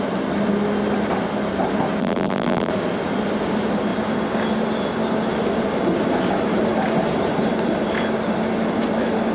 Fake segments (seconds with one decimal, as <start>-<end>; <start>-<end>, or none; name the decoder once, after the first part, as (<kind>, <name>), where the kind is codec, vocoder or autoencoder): 2.0-2.7 (vocoder, BigVGAN v2)